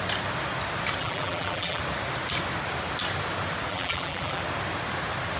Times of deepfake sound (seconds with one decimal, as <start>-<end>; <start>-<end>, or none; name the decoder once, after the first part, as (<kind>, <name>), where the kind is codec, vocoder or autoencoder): 1.0-1.8 (vocoder, BigVGAN v2); 3.7-4.4